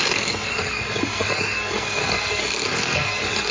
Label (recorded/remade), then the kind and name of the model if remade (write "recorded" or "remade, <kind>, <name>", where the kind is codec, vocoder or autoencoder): remade, codec, SNAC